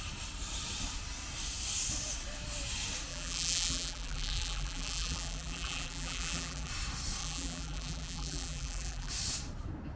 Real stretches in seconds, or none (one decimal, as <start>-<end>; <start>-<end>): 0.0-3.1; 6.7-7.2; 9.1-10.0

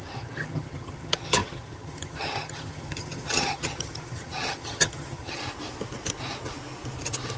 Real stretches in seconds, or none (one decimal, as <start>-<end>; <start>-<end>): 5.4-7.4

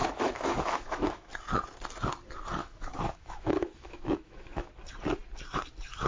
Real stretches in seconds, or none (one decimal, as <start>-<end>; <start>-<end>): 1.3-2.6; 4.7-6.1

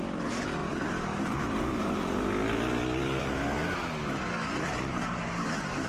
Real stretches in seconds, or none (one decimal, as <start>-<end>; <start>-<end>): 0.0-5.9

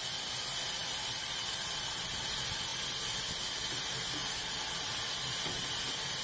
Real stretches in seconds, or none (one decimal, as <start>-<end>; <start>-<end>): 0.0-0.8; 2.2-4.2; 5.1-6.2

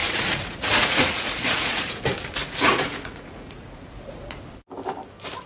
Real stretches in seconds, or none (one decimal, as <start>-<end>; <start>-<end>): 2.0-2.4; 4.4-5.5